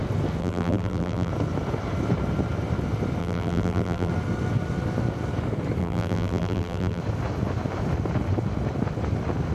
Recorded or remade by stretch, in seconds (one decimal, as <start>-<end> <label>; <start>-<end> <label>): 0.0-0.4 recorded; 0.4-1.3 remade; 1.3-3.2 recorded; 3.2-4.1 remade; 4.1-5.8 recorded; 5.8-7.0 remade; 7.0-9.5 recorded